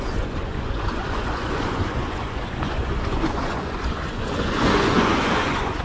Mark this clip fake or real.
fake